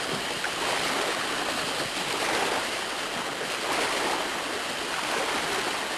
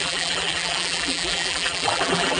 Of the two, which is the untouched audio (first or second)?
first